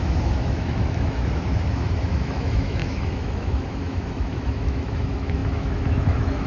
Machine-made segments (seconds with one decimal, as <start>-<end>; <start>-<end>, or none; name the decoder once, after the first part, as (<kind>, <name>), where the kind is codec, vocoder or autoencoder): 0.0-6.5 (autoencoder, DAC-VAE)